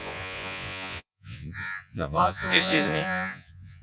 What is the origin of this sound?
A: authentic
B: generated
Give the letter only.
B